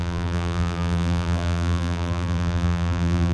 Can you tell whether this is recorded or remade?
remade